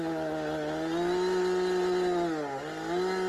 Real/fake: real